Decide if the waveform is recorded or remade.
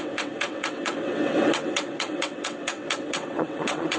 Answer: remade